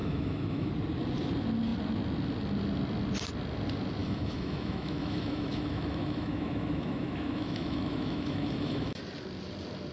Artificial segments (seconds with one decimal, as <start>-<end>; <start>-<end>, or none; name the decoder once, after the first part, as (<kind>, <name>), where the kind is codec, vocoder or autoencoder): 0.0-0.7 (autoencoder, DAC-VAE); 4.0-9.0